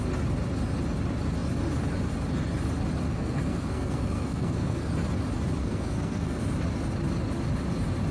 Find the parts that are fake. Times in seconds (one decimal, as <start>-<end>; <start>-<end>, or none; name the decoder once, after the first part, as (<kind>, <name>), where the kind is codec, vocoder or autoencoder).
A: 3.1-4.9 (codec, SNAC); 5.6-6.4